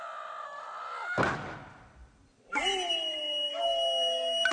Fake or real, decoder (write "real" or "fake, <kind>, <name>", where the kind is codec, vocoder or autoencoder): real